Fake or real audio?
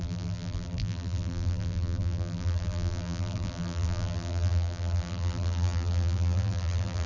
fake